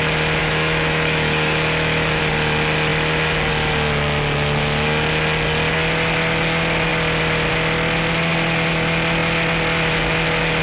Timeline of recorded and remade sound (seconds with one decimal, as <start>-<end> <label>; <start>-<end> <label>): 0.0-0.4 recorded; 0.4-2.2 remade; 2.2-10.6 recorded